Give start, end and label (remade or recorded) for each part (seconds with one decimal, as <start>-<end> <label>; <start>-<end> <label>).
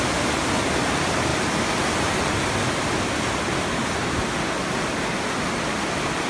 0.0-6.3 recorded